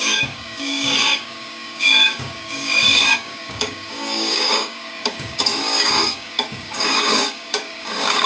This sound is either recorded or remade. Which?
remade